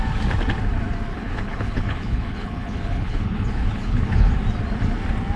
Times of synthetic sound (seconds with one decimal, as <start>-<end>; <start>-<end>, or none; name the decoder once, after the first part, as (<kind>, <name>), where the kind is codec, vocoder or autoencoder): 1.1-4.3 (codec, HILCodec)